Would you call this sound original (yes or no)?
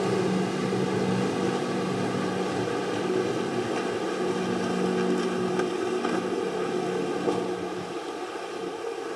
yes